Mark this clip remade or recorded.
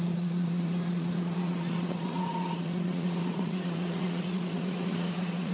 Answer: remade